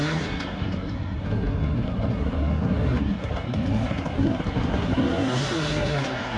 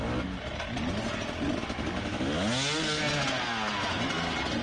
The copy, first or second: first